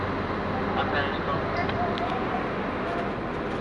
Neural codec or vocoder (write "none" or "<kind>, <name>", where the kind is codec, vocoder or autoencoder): none